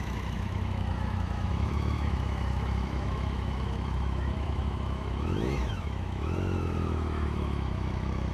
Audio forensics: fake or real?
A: fake